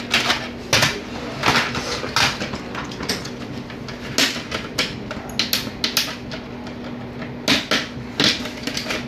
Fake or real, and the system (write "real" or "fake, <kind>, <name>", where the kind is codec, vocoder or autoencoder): real